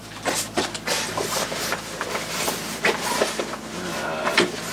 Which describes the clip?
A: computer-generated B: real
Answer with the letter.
B